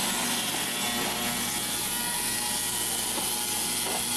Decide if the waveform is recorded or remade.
recorded